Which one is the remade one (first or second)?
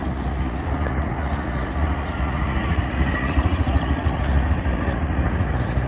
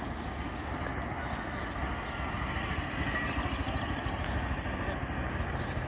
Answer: first